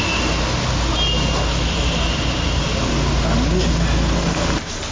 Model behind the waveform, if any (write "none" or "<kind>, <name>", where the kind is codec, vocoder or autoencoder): none